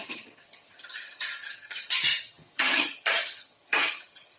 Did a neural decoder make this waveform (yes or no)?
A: yes